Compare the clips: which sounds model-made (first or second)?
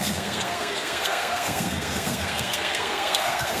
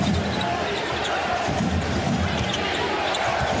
first